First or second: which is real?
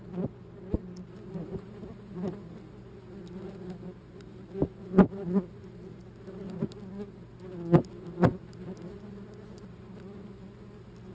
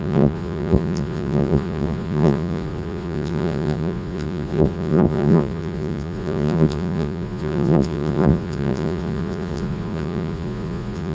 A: first